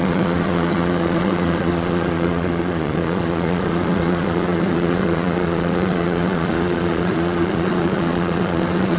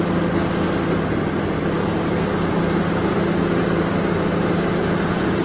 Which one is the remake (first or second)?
first